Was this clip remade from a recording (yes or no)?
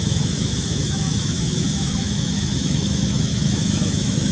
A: yes